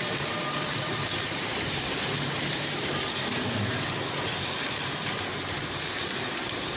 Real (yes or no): no